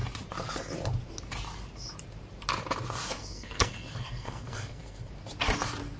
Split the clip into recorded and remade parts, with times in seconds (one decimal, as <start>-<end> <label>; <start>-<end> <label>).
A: 0.0-3.2 recorded; 3.2-5.1 remade; 5.1-6.0 recorded